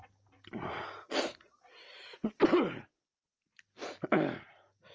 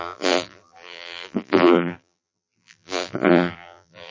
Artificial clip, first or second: second